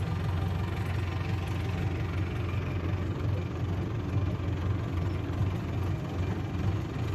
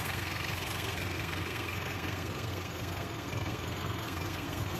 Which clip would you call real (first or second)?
first